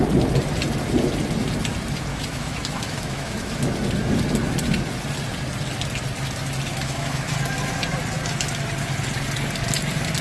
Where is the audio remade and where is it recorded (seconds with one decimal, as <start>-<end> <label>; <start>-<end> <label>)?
0.0-2.1 recorded; 2.1-3.6 remade; 3.6-6.7 recorded; 6.7-7.3 remade; 7.3-10.2 recorded